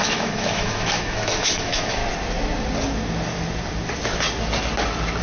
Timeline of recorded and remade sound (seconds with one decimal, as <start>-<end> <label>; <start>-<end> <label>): 0.0-2.0 remade; 2.0-5.2 recorded